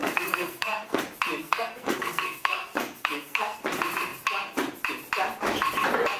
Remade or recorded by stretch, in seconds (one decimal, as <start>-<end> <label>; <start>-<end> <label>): 0.0-1.0 remade; 1.0-1.4 recorded; 1.4-3.6 remade; 3.6-6.2 recorded